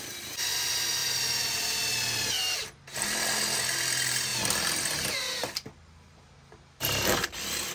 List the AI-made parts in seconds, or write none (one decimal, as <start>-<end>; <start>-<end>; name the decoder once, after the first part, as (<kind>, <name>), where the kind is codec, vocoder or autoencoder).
none